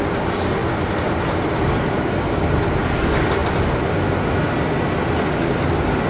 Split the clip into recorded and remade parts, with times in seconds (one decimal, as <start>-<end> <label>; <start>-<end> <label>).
0.0-6.1 recorded

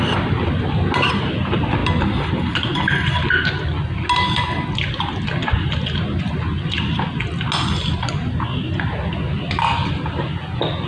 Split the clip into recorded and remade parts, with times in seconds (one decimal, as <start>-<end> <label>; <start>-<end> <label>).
0.0-10.9 recorded

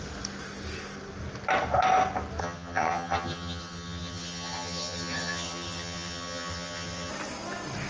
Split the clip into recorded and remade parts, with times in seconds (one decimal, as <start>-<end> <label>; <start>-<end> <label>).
0.0-2.4 recorded; 2.4-7.1 remade; 7.1-7.9 recorded

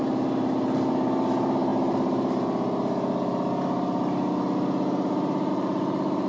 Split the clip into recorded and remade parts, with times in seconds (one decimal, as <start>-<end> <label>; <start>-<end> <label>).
0.0-6.3 recorded

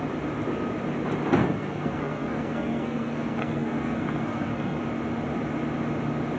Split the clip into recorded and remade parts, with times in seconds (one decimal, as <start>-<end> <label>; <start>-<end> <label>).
0.0-1.4 recorded; 1.4-4.8 remade; 4.8-6.4 recorded